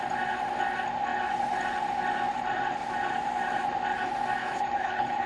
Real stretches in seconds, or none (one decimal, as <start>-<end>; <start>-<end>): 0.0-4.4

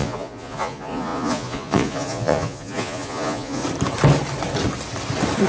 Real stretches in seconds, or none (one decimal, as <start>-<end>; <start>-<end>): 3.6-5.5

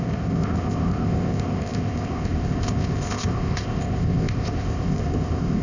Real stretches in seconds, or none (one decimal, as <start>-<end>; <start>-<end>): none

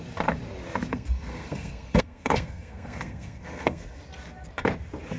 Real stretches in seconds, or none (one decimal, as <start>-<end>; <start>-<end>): 0.0-0.9; 4.0-5.2

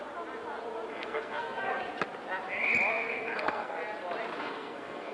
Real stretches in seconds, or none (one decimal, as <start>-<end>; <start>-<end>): 0.0-0.9; 1.7-2.9; 3.8-4.4